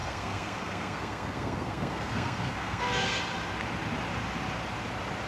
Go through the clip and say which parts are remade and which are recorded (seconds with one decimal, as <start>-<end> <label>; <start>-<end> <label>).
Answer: 0.0-3.2 remade; 3.2-5.3 recorded